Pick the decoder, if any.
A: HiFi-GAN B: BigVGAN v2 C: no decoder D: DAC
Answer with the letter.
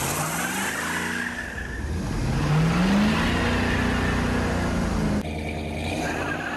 C